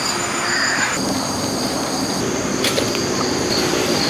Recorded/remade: recorded